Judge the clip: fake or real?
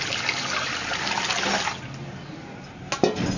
real